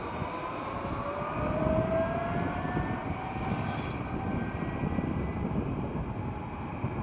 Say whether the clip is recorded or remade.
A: recorded